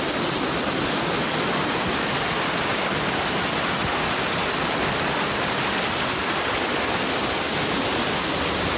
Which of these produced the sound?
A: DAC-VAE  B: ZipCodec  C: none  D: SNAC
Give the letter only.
C